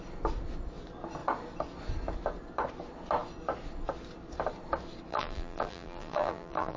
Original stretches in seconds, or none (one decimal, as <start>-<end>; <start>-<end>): 0.0-5.1